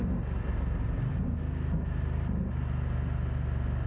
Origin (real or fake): real